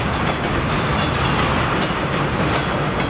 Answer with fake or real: real